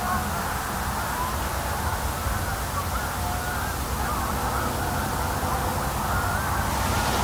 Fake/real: real